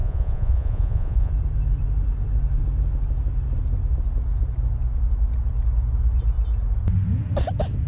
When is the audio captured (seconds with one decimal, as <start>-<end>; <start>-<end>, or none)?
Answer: 1.3-7.9